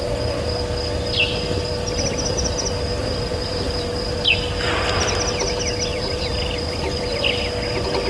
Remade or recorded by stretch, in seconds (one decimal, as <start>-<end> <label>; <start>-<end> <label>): 0.0-3.0 recorded; 3.0-3.9 remade; 3.9-5.9 recorded; 5.9-7.2 remade; 7.2-8.1 recorded